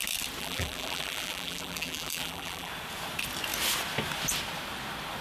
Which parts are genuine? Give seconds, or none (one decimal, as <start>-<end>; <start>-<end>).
0.0-0.4; 2.7-5.2